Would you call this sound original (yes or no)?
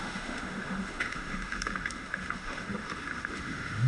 no